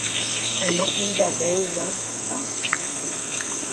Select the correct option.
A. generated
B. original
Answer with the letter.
A